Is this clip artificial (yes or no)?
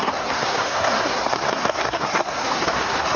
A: yes